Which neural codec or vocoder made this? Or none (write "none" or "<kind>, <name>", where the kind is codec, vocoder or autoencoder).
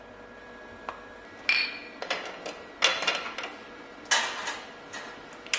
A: none